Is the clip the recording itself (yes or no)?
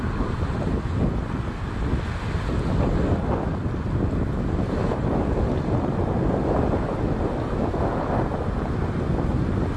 yes